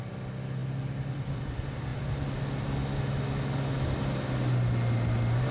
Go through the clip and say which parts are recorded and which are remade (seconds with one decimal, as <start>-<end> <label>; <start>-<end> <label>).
0.0-5.5 recorded